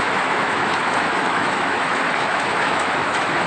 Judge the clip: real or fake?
fake